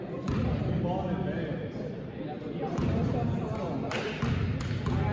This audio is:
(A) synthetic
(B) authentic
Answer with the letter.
B